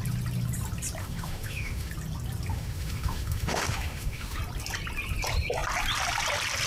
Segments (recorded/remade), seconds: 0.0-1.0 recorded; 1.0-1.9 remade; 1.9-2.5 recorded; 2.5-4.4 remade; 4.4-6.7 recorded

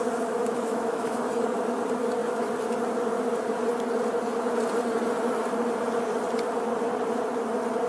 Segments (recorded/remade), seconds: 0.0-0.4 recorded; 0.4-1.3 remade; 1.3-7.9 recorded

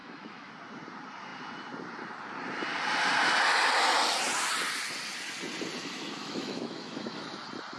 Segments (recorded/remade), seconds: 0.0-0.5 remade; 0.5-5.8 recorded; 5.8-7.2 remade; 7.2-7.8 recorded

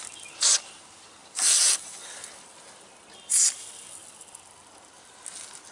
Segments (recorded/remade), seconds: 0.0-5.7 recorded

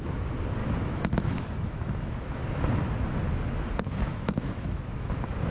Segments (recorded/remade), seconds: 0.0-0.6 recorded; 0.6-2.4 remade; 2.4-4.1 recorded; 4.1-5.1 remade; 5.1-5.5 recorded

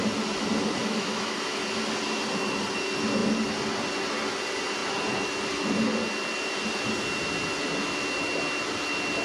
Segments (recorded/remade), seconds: 0.0-0.8 recorded; 0.8-1.6 remade; 1.6-9.2 recorded

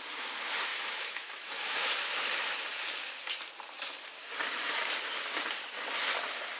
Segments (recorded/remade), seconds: 0.0-0.7 recorded; 0.7-1.9 remade; 1.9-6.6 recorded